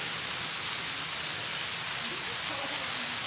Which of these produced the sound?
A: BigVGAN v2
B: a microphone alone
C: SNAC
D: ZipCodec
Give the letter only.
B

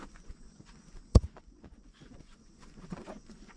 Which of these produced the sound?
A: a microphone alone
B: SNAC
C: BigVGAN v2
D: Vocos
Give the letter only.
D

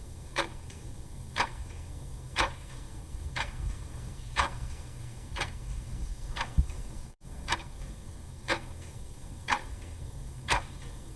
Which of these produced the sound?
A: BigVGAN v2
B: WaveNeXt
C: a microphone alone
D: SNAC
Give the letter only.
D